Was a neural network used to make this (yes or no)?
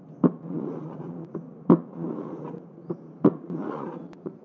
yes